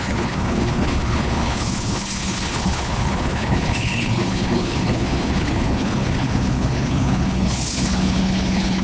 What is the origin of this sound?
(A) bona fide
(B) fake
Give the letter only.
B